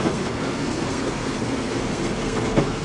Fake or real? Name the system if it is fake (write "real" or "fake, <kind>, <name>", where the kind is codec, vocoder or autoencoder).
fake, codec, SNAC